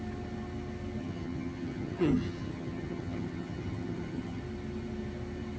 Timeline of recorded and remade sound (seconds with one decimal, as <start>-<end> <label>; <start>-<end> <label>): 0.0-1.0 recorded; 1.0-4.4 remade; 4.4-5.6 recorded